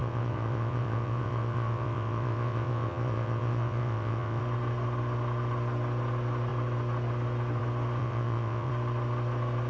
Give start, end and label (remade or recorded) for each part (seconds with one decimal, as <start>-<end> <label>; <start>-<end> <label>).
0.0-4.4 remade; 4.4-8.0 recorded; 8.0-8.7 remade; 8.7-9.7 recorded